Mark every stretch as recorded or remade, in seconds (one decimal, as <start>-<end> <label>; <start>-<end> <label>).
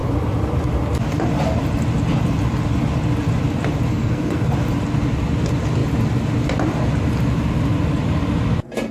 0.0-3.9 recorded; 3.9-4.5 remade; 4.5-8.9 recorded